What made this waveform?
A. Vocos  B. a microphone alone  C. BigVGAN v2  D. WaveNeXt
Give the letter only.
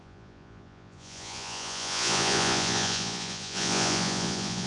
A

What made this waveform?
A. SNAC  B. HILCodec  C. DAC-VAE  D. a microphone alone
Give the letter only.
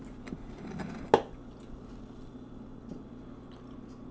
D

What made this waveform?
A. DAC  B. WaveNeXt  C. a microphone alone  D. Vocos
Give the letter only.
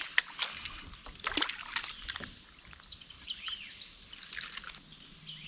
C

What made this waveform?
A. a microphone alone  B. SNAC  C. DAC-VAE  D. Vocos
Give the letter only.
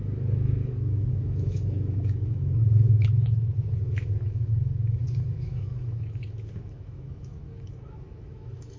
C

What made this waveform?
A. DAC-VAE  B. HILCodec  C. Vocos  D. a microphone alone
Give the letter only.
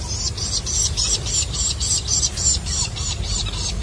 D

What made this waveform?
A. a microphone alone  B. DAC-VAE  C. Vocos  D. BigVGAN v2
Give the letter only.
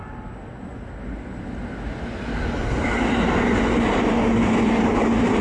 A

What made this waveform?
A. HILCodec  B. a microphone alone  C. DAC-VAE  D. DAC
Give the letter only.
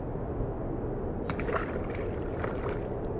B